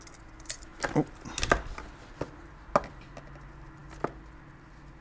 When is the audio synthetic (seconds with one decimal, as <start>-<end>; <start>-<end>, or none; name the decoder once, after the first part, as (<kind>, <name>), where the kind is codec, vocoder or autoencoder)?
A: none